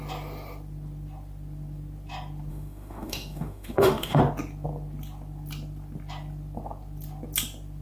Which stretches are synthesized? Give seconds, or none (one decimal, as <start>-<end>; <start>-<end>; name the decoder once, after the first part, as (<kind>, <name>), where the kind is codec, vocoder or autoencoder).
2.5-4.2 (autoencoder, DAC-VAE)